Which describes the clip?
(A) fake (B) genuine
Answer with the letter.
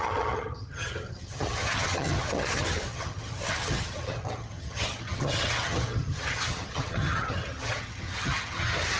A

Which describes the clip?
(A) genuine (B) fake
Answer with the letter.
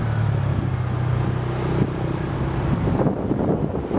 A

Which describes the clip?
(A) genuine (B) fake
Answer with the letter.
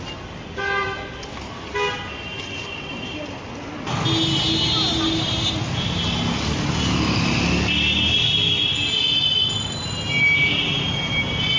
A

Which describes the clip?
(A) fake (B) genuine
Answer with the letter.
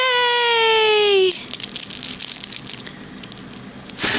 B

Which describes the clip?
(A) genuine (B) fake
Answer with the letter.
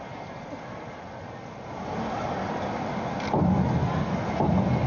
A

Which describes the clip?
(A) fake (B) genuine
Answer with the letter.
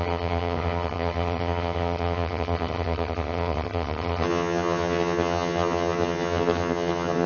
A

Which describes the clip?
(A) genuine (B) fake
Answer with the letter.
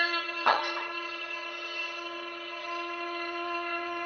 B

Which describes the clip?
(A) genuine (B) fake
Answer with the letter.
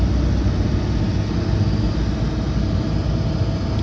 A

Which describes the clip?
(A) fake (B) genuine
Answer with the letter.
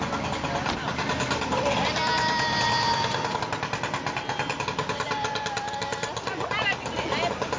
B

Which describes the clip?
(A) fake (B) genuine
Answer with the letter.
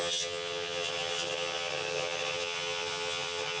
A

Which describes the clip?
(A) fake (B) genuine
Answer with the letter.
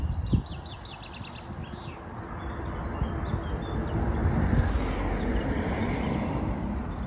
B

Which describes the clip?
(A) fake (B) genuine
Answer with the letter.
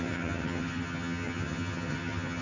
A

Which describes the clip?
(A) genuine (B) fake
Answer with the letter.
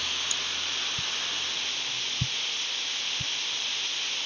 A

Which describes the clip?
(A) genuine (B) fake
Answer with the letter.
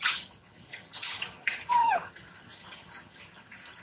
B